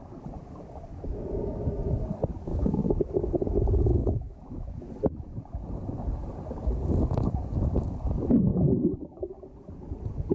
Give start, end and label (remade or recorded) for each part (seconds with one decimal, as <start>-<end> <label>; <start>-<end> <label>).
0.0-2.5 recorded; 2.5-3.0 remade; 3.0-4.0 recorded; 4.0-4.8 remade; 4.8-8.5 recorded; 8.5-9.3 remade; 9.3-10.3 recorded